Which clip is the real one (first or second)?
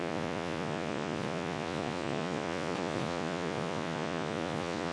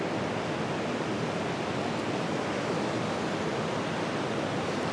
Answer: second